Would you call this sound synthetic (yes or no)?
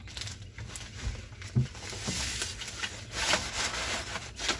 no